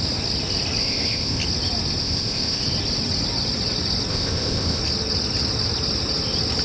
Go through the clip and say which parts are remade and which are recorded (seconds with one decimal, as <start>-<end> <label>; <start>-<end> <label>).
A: 0.0-0.8 recorded; 0.8-1.4 remade; 1.4-2.0 recorded; 2.0-2.6 remade; 2.6-4.1 recorded; 4.1-4.8 remade; 4.8-6.6 recorded